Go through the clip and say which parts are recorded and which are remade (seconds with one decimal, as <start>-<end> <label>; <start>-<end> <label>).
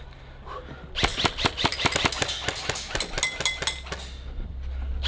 0.0-5.1 recorded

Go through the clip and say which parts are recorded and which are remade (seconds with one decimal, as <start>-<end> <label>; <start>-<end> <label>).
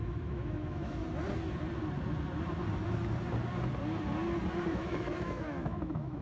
0.0-1.0 remade; 1.0-4.7 recorded; 4.7-6.2 remade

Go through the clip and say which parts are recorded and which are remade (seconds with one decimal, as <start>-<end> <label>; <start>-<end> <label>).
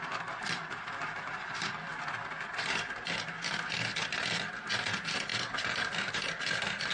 0.0-6.9 recorded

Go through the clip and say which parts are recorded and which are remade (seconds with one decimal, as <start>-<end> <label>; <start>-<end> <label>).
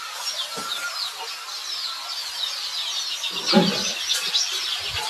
0.0-5.1 recorded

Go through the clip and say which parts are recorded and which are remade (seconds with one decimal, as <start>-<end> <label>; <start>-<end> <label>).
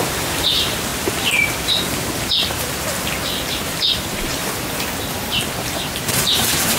0.0-0.9 remade; 0.9-3.5 recorded; 3.5-4.3 remade; 4.3-5.2 recorded; 5.2-6.8 remade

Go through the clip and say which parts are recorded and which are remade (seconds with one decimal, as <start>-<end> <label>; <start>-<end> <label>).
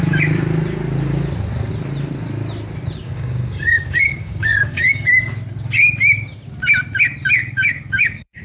0.0-3.0 recorded; 3.0-5.1 remade; 5.1-7.4 recorded; 7.4-8.4 remade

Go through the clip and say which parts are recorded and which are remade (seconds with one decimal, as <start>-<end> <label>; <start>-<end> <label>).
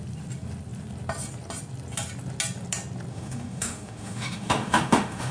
0.0-3.1 recorded; 3.1-5.3 remade